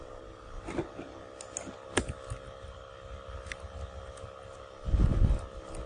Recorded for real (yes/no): yes